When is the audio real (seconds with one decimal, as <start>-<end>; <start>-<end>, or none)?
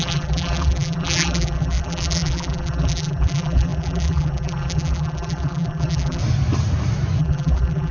6.2-7.2